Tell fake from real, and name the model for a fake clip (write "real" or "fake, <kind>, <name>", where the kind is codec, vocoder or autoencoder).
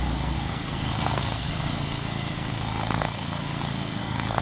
fake, codec, SNAC